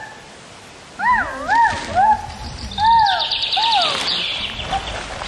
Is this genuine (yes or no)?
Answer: yes